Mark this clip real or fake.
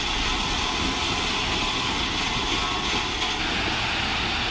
real